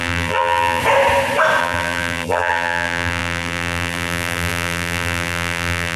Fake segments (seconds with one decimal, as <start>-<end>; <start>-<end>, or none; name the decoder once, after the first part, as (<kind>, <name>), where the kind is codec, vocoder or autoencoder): 0.0-0.8 (vocoder, BigVGAN v2); 1.6-6.0